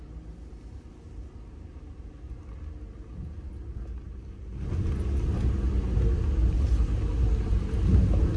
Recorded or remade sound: recorded